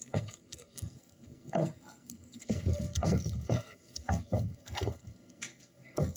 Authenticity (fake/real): fake